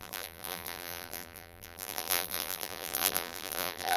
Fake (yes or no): yes